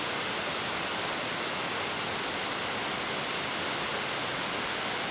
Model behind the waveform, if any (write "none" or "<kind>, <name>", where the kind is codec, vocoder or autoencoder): none